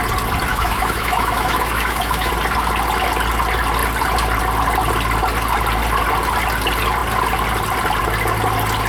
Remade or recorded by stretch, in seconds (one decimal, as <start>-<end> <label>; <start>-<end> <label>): 0.0-0.5 recorded; 0.5-2.3 remade; 2.3-8.9 recorded